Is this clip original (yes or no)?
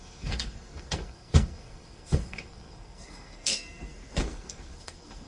no